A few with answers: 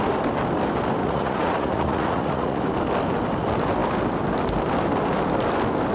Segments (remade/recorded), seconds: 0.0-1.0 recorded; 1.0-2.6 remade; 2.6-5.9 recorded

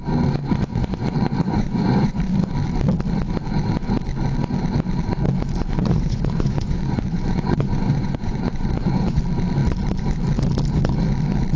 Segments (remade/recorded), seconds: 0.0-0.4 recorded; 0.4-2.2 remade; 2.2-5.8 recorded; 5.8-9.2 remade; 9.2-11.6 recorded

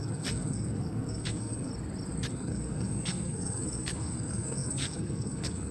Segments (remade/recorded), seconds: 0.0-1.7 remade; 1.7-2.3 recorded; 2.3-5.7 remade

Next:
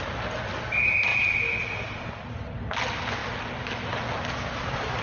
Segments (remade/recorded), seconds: 0.0-5.0 recorded